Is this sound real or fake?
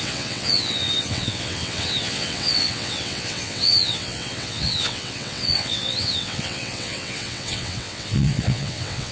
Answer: fake